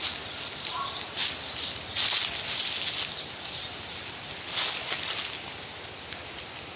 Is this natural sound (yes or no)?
yes